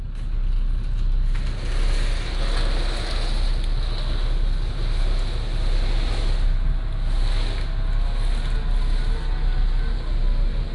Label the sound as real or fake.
real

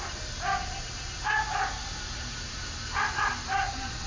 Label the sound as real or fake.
real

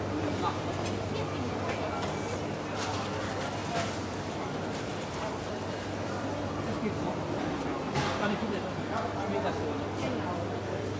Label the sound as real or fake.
real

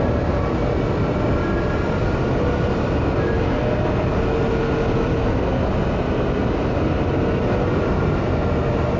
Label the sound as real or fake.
real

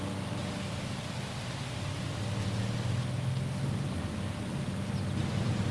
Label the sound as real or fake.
real